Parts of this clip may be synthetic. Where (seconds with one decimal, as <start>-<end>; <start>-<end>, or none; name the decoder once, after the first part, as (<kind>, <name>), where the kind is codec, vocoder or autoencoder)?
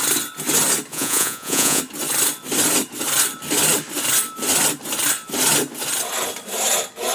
0.9-1.8 (vocoder, Vocos)